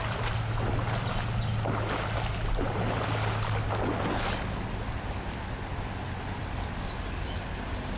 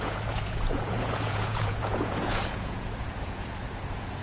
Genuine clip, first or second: first